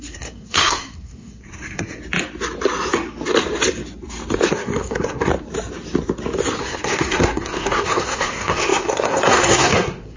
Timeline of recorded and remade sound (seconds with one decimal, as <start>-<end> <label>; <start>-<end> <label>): 0.0-2.0 remade; 2.0-4.5 recorded; 4.5-5.3 remade; 5.3-6.6 recorded; 6.6-10.2 remade